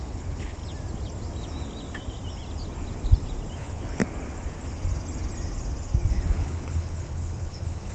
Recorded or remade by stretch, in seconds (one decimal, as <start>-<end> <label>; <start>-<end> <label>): 0.0-0.6 remade; 0.6-3.6 recorded; 3.6-4.0 remade; 4.0-6.1 recorded; 6.1-7.9 remade